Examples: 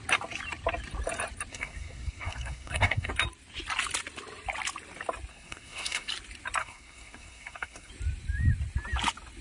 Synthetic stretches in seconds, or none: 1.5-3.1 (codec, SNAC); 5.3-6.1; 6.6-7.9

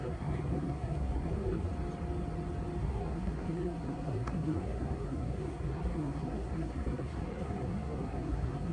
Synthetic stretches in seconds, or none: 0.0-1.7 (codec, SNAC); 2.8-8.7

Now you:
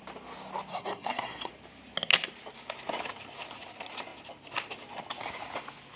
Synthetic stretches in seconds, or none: 0.7-1.5 (codec, SNAC)

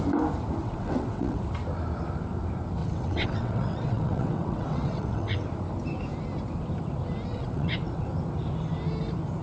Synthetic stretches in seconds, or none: 0.6-1.4 (vocoder, WaveNeXt); 2.8-5.5; 7.3-8.1

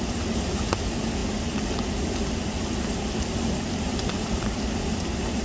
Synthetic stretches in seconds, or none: none

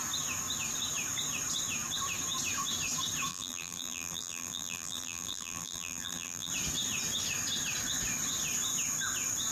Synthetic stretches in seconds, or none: 3.3-6.5 (vocoder, BigVGAN v2)

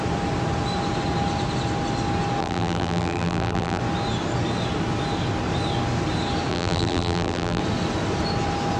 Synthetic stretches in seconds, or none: 2.4-3.8 (vocoder, BigVGAN v2); 6.5-7.6